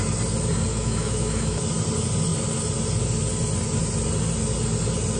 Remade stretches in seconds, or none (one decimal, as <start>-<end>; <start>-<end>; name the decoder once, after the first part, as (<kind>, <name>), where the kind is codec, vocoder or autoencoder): 0.7-1.6 (autoencoder, DAC-VAE)